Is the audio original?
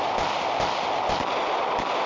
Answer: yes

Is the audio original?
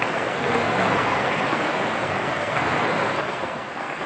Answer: no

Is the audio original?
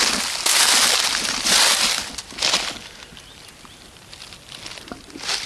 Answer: yes